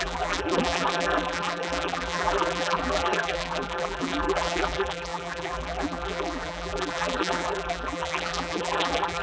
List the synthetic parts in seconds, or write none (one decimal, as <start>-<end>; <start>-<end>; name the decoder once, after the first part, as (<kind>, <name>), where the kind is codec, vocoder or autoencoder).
0.0-9.2 (vocoder, BigVGAN v2)